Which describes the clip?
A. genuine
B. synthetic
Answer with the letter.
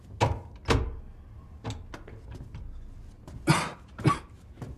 A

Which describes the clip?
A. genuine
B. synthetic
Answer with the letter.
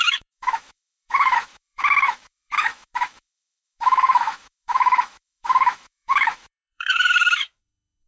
B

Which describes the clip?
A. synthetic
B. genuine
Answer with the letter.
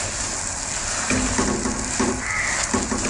B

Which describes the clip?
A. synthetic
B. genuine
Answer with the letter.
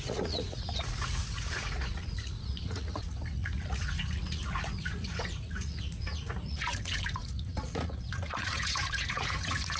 A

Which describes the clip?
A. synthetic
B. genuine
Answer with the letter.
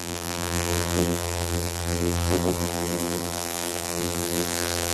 A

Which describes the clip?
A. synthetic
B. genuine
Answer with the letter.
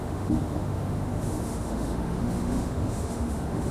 A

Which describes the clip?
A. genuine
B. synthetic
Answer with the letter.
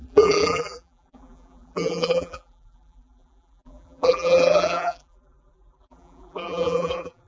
B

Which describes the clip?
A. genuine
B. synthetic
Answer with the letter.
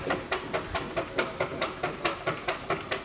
A